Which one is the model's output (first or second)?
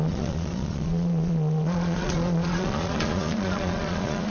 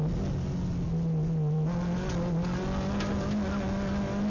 first